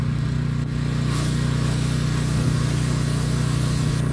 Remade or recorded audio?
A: recorded